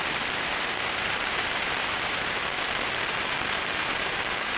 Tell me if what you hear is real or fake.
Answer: fake